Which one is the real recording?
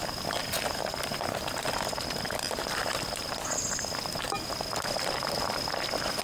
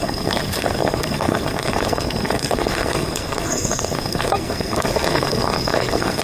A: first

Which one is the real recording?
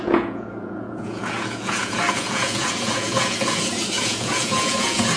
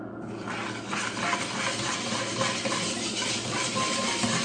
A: second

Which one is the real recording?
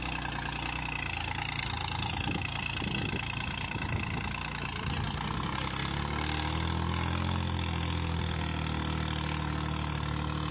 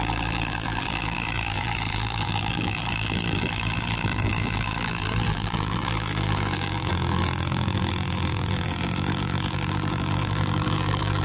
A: first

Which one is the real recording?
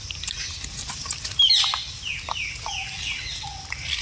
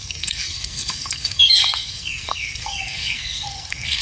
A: first